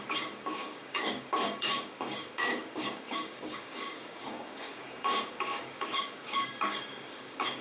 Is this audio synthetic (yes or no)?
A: yes